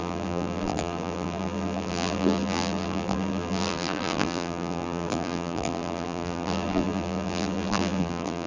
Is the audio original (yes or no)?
no